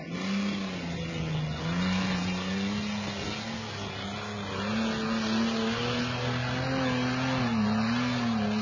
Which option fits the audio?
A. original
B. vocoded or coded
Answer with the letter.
A